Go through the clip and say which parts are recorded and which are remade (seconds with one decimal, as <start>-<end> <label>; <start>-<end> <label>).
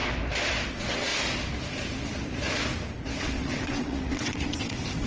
0.0-0.7 recorded; 0.7-1.1 remade; 1.1-3.2 recorded; 3.2-5.1 remade